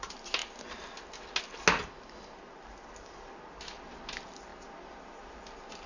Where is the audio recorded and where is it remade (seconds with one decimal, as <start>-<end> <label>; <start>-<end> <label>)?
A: 0.0-5.9 recorded